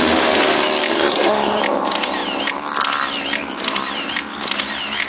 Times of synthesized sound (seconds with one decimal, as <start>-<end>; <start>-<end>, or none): 0.9-1.6